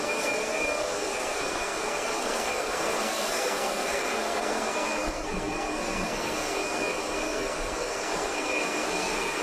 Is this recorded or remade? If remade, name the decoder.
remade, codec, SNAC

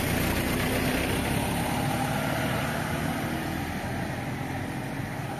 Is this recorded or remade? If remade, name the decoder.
recorded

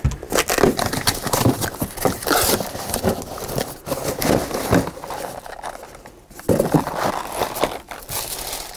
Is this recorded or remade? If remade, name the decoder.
recorded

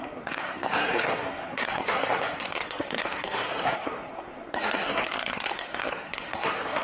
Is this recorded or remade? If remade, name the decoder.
remade, codec, SNAC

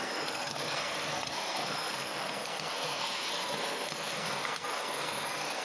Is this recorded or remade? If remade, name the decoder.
remade, codec, SNAC